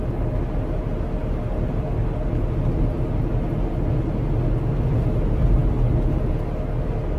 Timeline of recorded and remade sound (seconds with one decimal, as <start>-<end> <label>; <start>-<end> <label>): 0.0-7.2 recorded